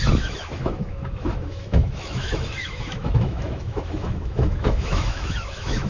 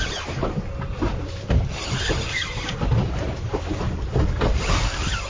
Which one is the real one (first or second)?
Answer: second